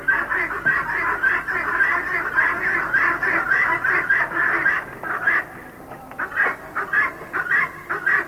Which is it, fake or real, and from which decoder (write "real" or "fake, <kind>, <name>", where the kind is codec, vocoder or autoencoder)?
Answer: fake, vocoder, BigVGAN v2